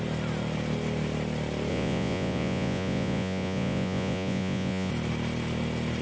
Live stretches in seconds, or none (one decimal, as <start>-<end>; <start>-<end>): 0.0-1.7; 4.9-6.0

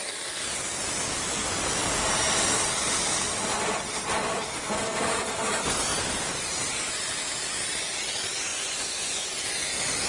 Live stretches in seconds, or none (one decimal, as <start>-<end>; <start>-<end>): 0.0-8.5; 9.4-10.1

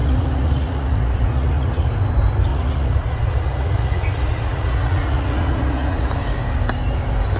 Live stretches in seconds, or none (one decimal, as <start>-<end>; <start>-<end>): 1.9-2.5; 6.1-7.4

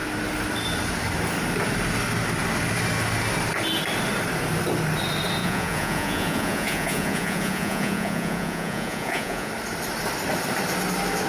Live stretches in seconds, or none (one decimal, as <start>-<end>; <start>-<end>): 0.0-5.4; 9.5-11.3

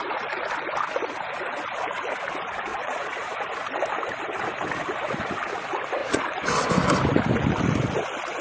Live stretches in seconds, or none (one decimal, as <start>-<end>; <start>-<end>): 0.0-2.7; 3.5-6.0; 6.7-8.4

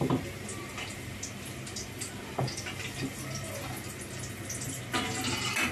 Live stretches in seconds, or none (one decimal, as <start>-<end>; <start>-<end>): 0.0-5.7

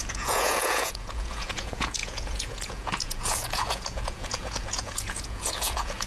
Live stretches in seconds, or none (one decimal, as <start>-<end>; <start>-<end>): none

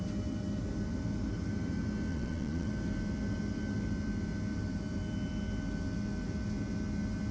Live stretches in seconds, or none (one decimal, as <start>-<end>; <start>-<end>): 0.0-2.1; 2.7-7.3